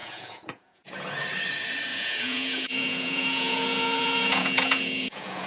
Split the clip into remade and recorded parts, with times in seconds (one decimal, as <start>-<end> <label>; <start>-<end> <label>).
0.0-1.2 remade; 1.2-1.9 recorded; 1.9-5.5 remade